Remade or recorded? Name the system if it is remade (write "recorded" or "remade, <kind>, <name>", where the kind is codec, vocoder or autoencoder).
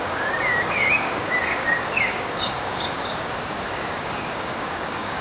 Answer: remade, codec, DAC